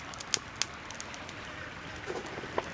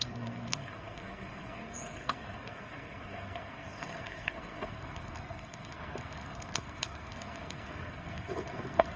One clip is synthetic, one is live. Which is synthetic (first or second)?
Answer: second